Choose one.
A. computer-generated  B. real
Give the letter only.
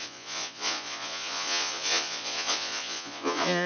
A